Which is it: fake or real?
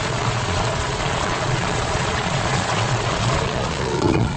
fake